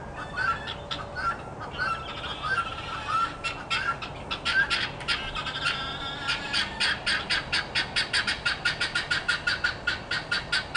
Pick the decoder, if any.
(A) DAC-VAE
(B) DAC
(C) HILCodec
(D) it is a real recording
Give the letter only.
D